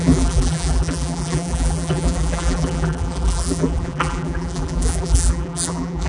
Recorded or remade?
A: remade